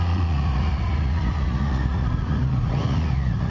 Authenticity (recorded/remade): remade